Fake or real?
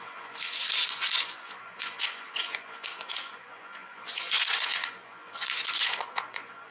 fake